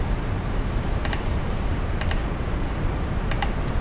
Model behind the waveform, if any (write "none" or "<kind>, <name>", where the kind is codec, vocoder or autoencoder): vocoder, BigVGAN v2